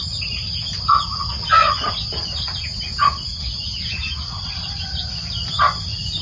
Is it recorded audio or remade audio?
recorded